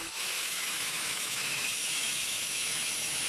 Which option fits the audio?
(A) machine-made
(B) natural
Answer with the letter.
A